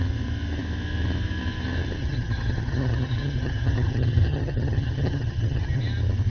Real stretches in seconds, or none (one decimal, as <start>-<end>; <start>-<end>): 0.0-2.0; 5.8-6.3